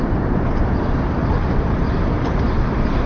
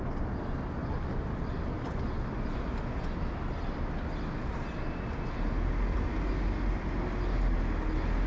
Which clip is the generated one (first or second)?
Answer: first